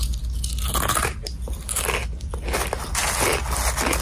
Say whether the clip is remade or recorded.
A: recorded